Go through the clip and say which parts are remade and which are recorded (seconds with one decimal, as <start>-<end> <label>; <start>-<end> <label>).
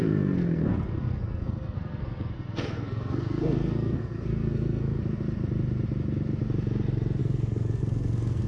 0.0-5.0 remade; 5.0-7.2 recorded; 7.2-8.5 remade